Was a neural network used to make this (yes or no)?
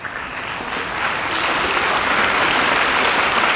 no